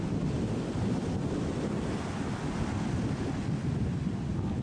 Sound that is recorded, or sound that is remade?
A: recorded